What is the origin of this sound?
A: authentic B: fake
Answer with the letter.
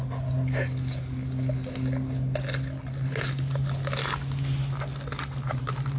A